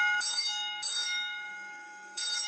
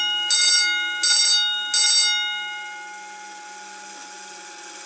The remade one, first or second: first